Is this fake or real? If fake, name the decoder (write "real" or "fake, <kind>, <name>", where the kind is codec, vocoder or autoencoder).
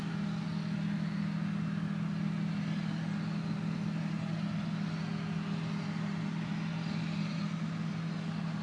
real